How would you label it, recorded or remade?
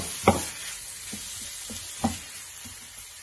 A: recorded